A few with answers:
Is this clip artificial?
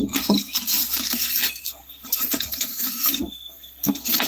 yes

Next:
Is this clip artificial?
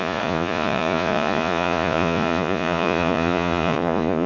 yes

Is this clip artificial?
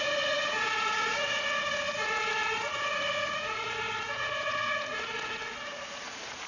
yes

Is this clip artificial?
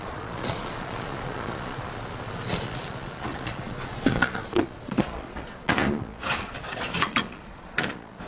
yes